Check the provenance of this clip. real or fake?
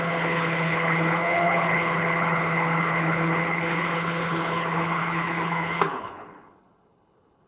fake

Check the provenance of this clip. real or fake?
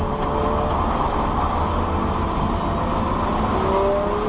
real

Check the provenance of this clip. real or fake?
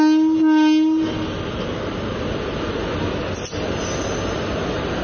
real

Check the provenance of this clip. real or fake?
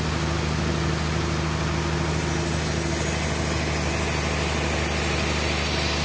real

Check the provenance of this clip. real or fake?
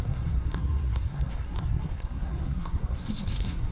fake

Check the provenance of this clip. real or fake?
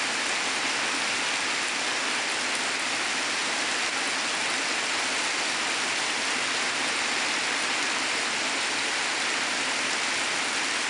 real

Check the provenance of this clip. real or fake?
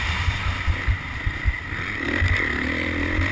real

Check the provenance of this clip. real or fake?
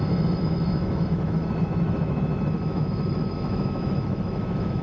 fake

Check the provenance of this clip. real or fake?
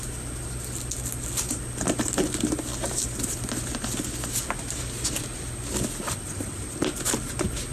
real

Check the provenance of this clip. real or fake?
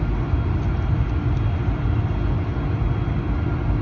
real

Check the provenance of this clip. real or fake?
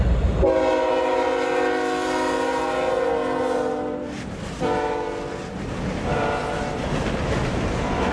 real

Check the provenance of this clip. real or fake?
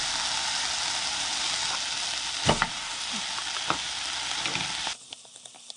real